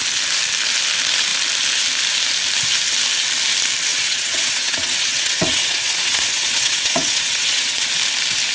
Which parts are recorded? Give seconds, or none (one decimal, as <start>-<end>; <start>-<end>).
0.0-3.9; 7.9-8.5